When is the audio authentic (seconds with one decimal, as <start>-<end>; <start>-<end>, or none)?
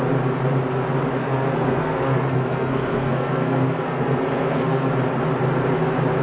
0.0-1.2; 4.9-6.2